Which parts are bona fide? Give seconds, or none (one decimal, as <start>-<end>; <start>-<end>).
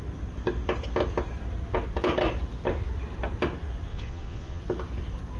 0.0-3.9; 4.6-5.4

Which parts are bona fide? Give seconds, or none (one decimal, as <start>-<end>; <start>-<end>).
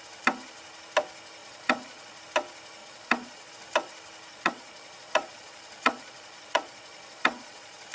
0.0-1.4; 2.2-2.8; 3.5-4.3